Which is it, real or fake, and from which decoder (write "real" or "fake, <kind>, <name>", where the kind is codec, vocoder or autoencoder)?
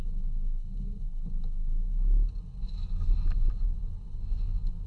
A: real